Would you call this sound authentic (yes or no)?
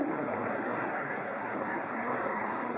no